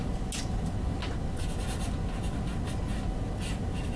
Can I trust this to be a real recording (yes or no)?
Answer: yes